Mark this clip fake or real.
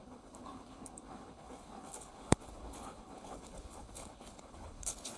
fake